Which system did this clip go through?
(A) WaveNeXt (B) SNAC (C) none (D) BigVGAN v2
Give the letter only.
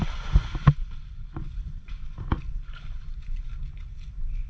C